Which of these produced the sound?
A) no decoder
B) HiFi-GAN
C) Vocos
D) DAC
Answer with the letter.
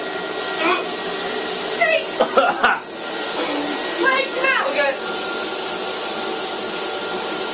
A